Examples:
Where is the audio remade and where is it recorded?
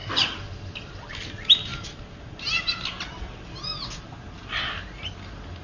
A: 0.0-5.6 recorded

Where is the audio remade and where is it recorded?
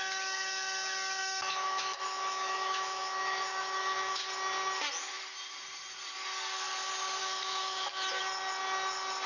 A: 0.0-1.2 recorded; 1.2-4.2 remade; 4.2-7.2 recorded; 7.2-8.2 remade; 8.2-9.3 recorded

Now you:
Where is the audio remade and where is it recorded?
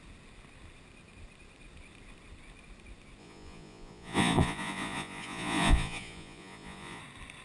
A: 0.0-3.2 recorded; 3.2-7.0 remade; 7.0-7.4 recorded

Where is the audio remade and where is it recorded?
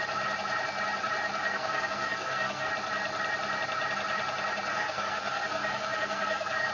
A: 0.0-1.4 recorded; 1.4-2.7 remade; 2.7-4.7 recorded; 4.7-6.7 remade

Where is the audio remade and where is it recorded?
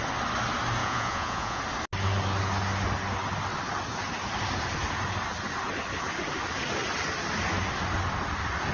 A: 0.0-0.8 recorded; 0.8-1.6 remade; 1.6-8.7 recorded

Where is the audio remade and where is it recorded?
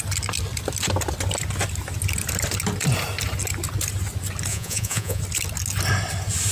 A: 0.0-4.5 recorded; 4.5-5.2 remade; 5.2-6.5 recorded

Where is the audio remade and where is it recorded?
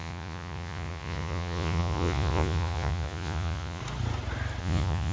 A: 0.0-3.8 remade; 3.8-4.6 recorded; 4.6-5.1 remade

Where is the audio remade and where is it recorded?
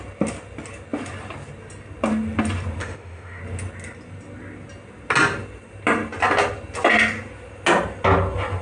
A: 0.0-2.8 recorded; 2.8-3.4 remade; 3.4-8.6 recorded